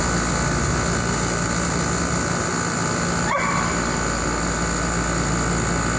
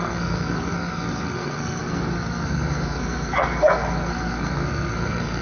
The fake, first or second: second